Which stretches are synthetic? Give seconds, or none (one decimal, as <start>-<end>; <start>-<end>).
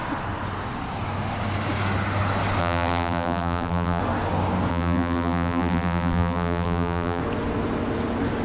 2.6-4.0; 4.7-7.2